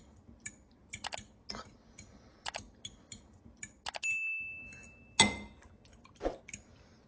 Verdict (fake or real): real